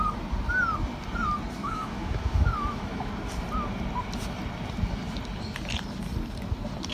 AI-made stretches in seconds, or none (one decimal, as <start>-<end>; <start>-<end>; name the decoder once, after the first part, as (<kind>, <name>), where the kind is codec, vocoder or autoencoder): 1.6-3.1 (autoencoder, DAC-VAE)